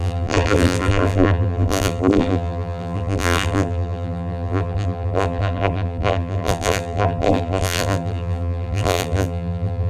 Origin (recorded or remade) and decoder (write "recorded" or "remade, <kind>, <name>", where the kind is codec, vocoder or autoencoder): remade, vocoder, BigVGAN v2